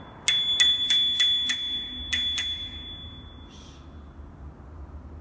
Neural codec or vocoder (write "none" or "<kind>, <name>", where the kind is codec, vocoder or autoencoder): none